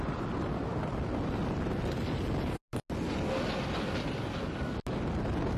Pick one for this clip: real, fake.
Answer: real